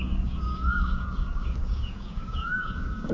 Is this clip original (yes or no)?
no